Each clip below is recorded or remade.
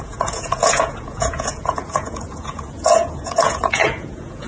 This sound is remade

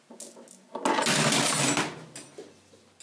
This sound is recorded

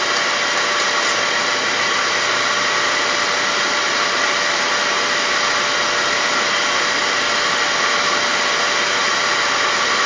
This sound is recorded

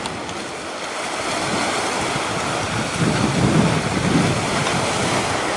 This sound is recorded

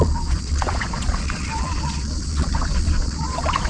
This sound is remade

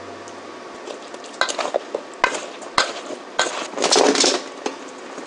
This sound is recorded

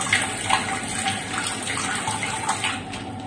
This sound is recorded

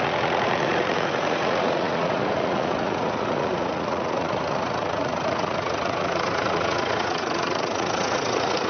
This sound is remade